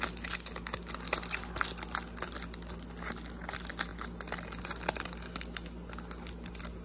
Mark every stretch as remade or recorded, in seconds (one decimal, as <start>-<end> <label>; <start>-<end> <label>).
0.0-6.8 recorded